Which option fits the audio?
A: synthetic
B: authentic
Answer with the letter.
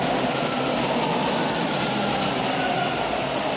B